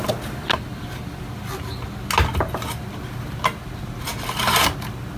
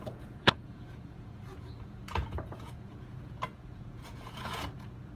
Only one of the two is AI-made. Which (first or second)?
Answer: second